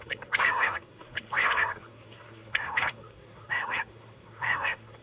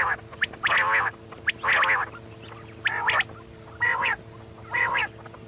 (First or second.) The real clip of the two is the second